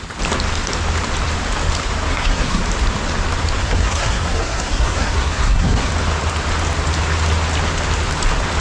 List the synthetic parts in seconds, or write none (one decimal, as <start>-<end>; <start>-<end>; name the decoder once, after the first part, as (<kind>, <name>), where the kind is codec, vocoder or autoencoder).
2.1-2.6 (codec, SNAC); 3.6-5.9